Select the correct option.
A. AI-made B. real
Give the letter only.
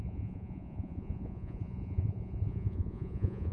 A